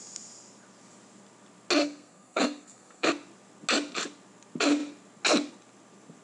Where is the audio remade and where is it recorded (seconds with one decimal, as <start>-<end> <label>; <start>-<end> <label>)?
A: 0.0-1.8 recorded; 1.8-3.1 remade; 3.1-6.2 recorded

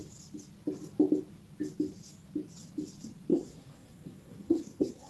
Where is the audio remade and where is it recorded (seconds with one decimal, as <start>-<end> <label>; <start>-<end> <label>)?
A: 0.0-3.3 recorded; 3.3-5.1 remade

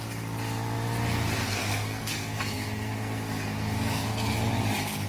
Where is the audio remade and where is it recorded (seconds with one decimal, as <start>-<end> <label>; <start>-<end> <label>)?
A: 0.0-1.4 recorded; 1.4-4.5 remade; 4.5-5.1 recorded

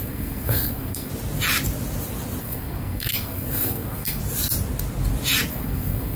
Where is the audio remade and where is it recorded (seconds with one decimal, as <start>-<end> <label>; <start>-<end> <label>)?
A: 0.0-1.1 remade; 1.1-2.4 recorded; 2.4-4.2 remade; 4.2-5.5 recorded; 5.5-6.2 remade

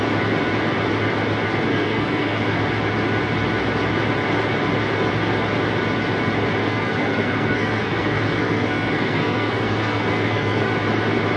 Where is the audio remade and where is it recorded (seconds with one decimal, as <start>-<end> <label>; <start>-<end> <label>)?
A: 0.0-1.7 recorded; 1.7-2.6 remade; 2.6-6.6 recorded; 6.6-10.7 remade; 10.7-11.4 recorded

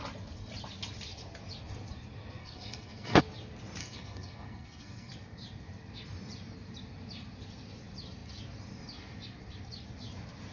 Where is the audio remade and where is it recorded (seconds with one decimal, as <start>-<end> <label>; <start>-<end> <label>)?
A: 0.0-2.4 recorded; 2.4-3.2 remade; 3.2-3.8 recorded; 3.8-5.1 remade; 5.1-10.5 recorded

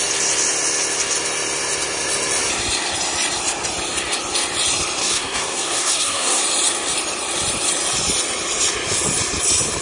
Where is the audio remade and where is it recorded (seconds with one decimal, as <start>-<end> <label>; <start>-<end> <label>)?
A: 0.0-5.0 recorded; 5.0-6.4 remade; 6.4-9.8 recorded

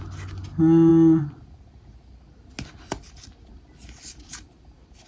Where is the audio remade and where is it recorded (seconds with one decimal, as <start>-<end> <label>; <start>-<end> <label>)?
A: 0.0-5.1 recorded